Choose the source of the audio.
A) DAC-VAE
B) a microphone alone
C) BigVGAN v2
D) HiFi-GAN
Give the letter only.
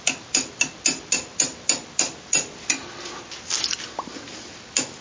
B